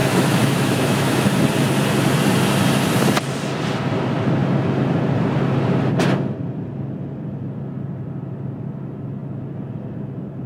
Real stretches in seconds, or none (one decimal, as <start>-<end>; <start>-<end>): 1.2-10.5